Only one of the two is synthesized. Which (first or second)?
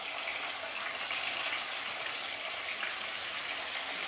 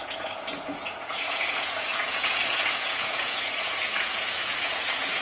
second